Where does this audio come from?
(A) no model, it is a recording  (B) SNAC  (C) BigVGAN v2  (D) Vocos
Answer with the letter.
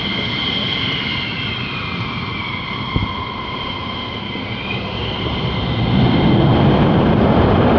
A